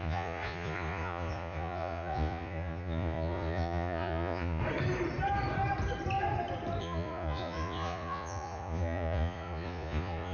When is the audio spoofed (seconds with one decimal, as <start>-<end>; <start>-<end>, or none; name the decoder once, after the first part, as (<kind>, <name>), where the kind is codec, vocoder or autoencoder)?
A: 0.0-4.6 (vocoder, Vocos); 6.8-10.3